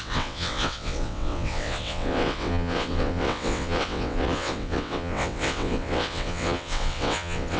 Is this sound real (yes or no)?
no